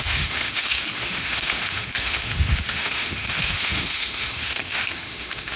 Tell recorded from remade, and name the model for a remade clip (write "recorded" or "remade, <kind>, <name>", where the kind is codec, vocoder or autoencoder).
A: remade, autoencoder, DAC-VAE